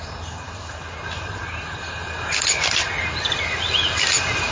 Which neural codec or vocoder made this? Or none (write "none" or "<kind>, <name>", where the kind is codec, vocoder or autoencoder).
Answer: none